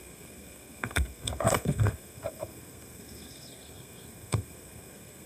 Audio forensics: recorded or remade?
remade